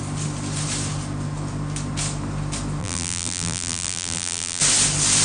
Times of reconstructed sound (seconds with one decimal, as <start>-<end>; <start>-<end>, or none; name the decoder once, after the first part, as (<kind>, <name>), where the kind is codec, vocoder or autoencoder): 2.8-4.6 (vocoder, BigVGAN v2)